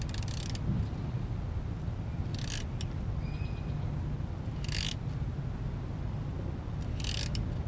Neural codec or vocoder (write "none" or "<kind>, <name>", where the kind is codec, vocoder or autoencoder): none